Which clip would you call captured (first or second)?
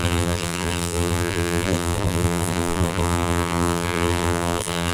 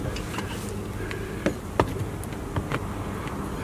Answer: second